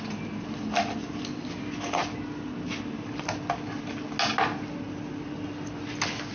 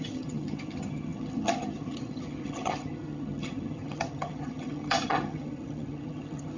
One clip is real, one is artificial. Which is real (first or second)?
first